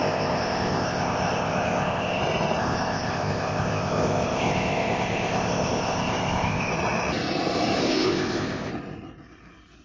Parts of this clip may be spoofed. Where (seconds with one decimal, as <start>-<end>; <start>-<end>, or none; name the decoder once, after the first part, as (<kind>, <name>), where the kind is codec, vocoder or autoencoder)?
0.0-2.2 (codec, ZipCodec); 2.6-6.7; 7.8-8.7